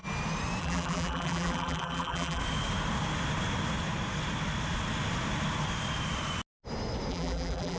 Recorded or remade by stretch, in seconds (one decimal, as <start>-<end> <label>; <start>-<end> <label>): 0.0-0.6 recorded; 0.6-2.4 remade; 2.4-7.1 recorded; 7.1-7.8 remade